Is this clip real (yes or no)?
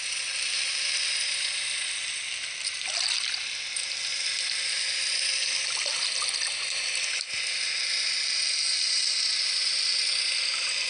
yes